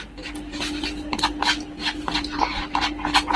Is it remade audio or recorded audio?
recorded